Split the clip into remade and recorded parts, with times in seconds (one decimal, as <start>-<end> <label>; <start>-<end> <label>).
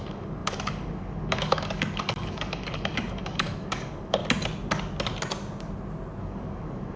0.0-4.2 remade; 4.2-6.2 recorded; 6.2-7.0 remade